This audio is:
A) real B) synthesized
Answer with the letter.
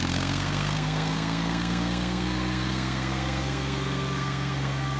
B